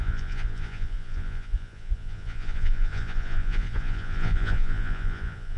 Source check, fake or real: fake